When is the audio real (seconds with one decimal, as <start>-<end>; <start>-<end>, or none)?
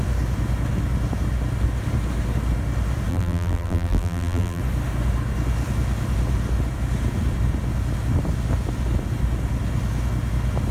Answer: 0.0-3.1; 4.6-10.7